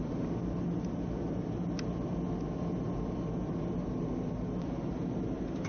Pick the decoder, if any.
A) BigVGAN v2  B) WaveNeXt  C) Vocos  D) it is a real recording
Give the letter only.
D